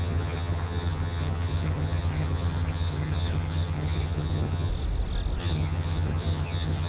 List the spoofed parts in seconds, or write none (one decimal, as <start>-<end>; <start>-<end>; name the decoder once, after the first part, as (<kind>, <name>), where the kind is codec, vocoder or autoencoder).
0.0-4.7 (vocoder, HiFi-GAN); 5.4-6.9